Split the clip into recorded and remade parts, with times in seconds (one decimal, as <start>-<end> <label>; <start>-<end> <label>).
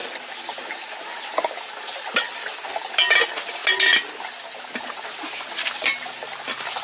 0.0-6.8 recorded